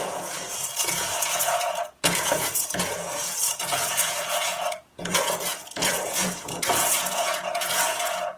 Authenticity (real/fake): fake